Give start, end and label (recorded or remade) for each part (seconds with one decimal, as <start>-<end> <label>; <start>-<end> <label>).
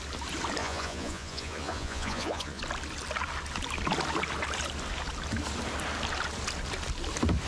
0.0-0.6 recorded; 0.6-2.6 remade; 2.6-7.5 recorded